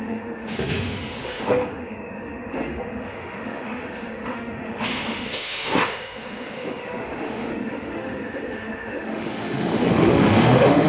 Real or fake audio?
fake